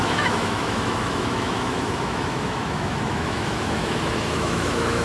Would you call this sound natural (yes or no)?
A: no